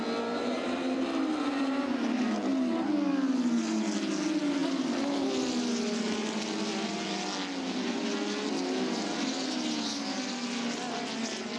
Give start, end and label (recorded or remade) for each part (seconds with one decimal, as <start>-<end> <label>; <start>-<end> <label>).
0.0-11.6 recorded